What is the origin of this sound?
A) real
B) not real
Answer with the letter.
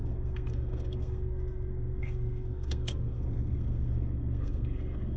B